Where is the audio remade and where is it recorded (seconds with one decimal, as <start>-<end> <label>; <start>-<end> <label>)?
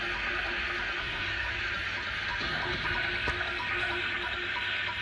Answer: 0.0-1.0 recorded; 1.0-1.5 remade; 1.5-5.0 recorded